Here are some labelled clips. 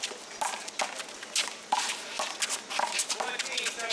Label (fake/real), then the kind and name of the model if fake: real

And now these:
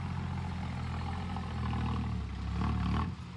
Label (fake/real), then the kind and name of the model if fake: real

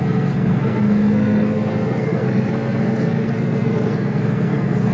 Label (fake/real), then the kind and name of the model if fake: fake, codec, SNAC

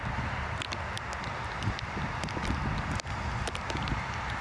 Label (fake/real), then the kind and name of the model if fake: real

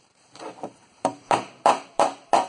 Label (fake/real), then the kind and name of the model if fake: fake, vocoder, BigVGAN v2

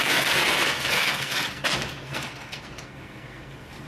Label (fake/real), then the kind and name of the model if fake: fake, codec, SNAC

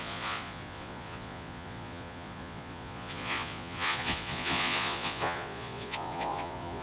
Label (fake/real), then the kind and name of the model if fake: fake, vocoder, Vocos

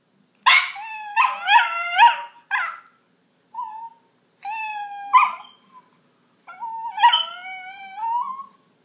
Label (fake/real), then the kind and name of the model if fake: real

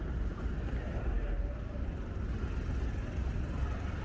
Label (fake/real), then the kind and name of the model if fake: real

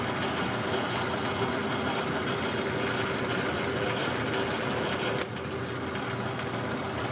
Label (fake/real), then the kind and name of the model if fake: real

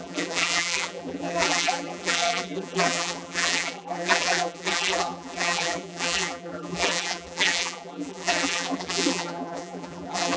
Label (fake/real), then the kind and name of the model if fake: fake, vocoder, BigVGAN v2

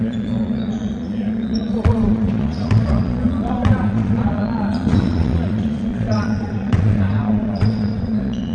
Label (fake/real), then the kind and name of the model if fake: fake, vocoder, Vocos